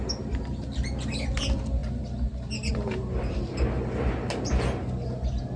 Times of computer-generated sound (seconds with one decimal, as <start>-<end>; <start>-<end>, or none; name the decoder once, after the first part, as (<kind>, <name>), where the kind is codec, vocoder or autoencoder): none